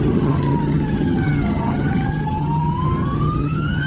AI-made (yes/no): yes